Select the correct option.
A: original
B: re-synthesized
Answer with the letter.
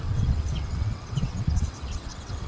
B